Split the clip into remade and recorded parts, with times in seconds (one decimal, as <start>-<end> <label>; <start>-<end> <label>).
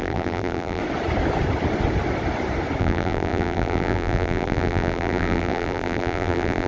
0.0-0.8 remade; 0.8-2.8 recorded; 2.8-6.7 remade